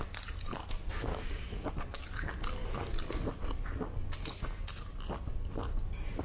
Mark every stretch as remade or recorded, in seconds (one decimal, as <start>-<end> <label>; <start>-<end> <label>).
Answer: 0.0-1.1 recorded; 1.1-1.7 remade; 1.7-6.2 recorded